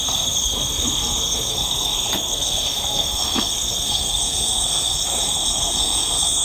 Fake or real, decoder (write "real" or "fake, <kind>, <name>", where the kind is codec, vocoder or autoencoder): fake, codec, SNAC